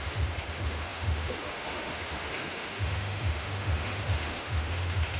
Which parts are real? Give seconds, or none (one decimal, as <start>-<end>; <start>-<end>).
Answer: none